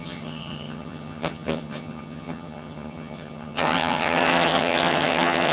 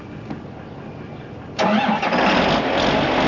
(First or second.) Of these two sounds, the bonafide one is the second